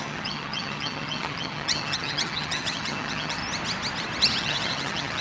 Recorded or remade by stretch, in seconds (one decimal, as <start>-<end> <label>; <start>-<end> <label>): 0.0-3.4 remade; 3.4-4.4 recorded; 4.4-5.2 remade